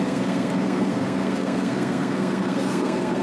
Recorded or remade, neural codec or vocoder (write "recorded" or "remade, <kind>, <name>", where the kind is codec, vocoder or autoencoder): remade, codec, SNAC